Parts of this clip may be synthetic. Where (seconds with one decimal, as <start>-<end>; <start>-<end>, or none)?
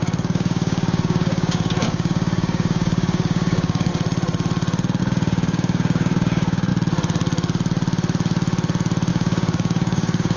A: 0.0-3.9; 5.0-6.7; 9.1-10.4